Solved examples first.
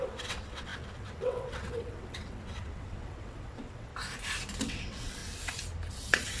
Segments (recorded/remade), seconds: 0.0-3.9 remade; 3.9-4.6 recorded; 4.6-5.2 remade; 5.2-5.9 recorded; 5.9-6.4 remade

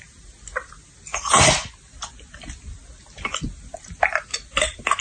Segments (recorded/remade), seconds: 0.0-5.0 recorded